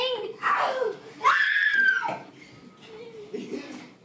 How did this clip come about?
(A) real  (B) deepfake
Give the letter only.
A